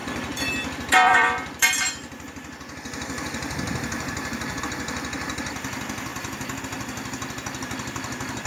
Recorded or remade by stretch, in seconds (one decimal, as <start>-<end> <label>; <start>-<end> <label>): 0.0-4.6 remade; 4.6-6.1 recorded; 6.1-6.6 remade; 6.6-8.5 recorded